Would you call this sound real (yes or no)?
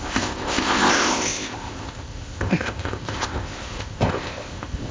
no